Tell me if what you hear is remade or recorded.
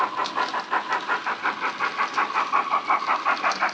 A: recorded